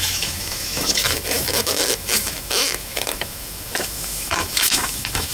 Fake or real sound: fake